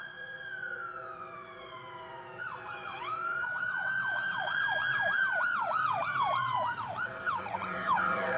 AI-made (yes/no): yes